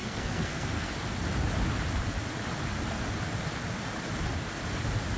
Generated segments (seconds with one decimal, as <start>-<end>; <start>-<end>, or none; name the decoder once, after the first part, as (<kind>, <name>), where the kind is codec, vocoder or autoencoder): 0.0-0.9 (codec, SNAC)